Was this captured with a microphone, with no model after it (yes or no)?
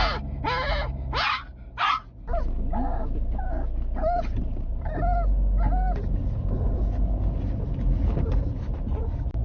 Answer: yes